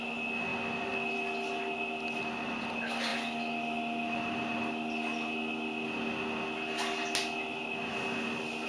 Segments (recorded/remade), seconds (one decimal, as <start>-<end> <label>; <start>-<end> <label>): 0.0-8.7 recorded